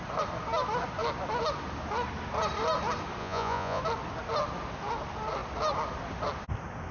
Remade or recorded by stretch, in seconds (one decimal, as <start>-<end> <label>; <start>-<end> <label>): 0.0-3.2 recorded; 3.2-3.8 remade; 3.8-6.9 recorded